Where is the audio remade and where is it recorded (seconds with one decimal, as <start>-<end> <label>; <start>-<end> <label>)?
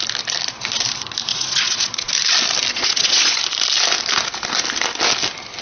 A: 0.0-1.3 recorded; 1.3-2.1 remade; 2.1-2.7 recorded; 2.7-3.4 remade; 3.4-5.6 recorded